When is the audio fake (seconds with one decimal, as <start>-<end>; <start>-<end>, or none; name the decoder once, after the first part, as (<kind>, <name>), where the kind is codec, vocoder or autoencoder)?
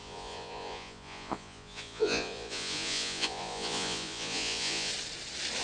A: 0.0-4.9 (vocoder, Vocos)